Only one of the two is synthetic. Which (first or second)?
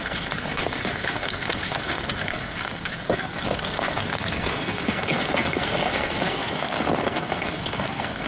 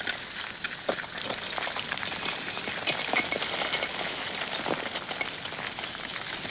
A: first